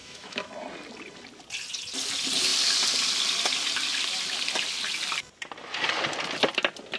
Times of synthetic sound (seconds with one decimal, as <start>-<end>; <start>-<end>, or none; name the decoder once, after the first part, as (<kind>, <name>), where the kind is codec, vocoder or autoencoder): 0.0-0.5 (autoencoder, DAC-VAE)

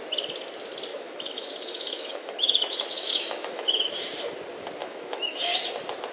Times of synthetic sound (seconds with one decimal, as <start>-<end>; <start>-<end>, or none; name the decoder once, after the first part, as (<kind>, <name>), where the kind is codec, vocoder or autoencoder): 0.9-3.9 (autoencoder, DAC-VAE); 4.8-5.4

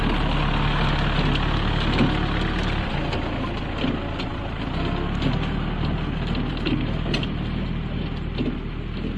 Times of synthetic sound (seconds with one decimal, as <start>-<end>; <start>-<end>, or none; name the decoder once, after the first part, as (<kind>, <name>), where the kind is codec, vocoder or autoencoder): none

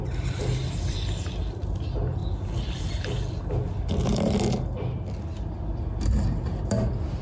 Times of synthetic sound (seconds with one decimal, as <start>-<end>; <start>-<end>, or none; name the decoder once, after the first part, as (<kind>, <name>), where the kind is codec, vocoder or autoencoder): none

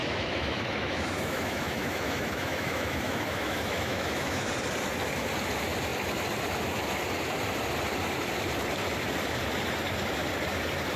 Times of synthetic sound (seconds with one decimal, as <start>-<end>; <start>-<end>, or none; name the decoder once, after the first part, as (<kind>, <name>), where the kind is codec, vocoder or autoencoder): 0.0-4.5 (autoencoder, DAC-VAE)